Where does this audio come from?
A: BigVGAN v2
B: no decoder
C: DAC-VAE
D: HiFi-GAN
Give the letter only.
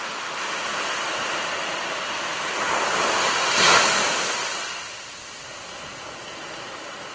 B